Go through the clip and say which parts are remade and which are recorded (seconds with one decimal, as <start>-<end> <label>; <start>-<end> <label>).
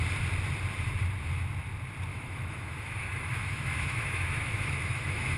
0.0-2.1 recorded; 2.1-5.4 remade